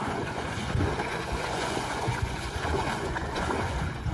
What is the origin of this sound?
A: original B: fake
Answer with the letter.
B